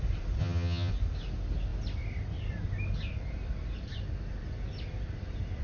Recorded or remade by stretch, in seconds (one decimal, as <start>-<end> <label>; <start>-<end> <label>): 0.0-0.4 recorded; 0.4-0.9 remade; 0.9-5.6 recorded